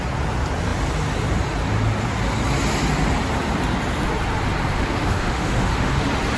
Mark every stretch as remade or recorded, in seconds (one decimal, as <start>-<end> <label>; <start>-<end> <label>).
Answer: 0.0-4.6 recorded; 4.6-6.0 remade; 6.0-6.4 recorded